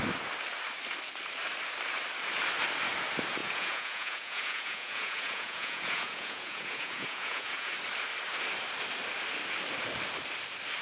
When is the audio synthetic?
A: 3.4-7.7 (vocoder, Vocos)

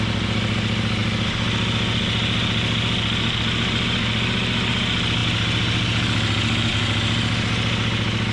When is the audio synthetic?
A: none

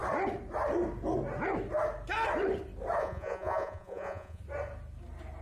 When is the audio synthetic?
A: 3.0-4.4 (vocoder, Vocos)

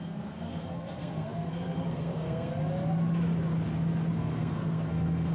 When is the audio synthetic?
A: 0.0-2.5 (codec, SNAC); 4.1-5.3

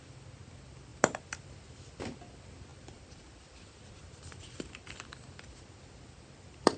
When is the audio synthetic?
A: 0.9-2.0 (vocoder, BigVGAN v2); 2.7-6.8

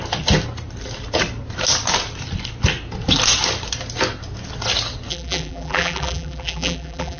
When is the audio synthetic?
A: 5.1-7.2 (vocoder, BigVGAN v2)